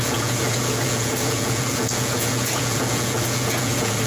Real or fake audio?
fake